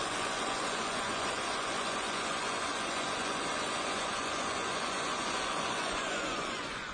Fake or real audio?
fake